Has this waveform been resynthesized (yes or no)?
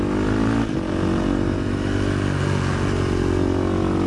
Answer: no